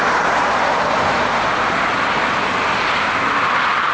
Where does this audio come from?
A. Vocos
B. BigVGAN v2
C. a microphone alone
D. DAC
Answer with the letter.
C